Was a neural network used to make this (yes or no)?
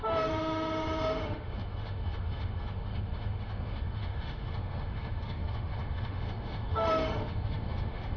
yes